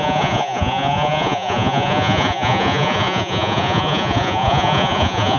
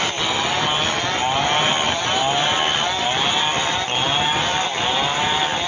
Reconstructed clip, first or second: first